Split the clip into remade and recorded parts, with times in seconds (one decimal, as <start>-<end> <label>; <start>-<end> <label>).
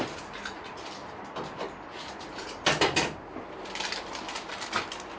0.0-5.2 recorded